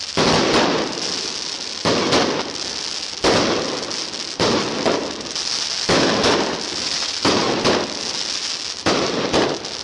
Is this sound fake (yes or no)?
no